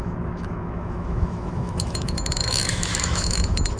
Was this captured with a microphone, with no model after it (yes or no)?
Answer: no